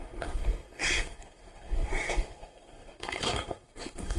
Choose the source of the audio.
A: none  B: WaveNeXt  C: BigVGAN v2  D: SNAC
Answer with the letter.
D